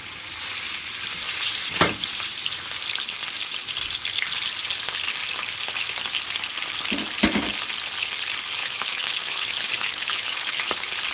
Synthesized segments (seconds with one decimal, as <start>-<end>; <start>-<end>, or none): 8.6-10.7